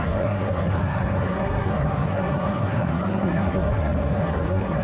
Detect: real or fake fake